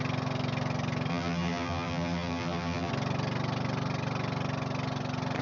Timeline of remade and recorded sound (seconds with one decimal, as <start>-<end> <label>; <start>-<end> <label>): 0.0-1.1 recorded; 1.1-2.9 remade; 2.9-5.4 recorded